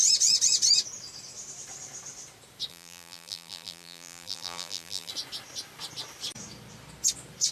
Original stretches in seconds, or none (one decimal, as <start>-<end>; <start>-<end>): 0.0-2.7; 5.1-7.5